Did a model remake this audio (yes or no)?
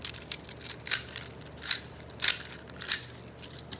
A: no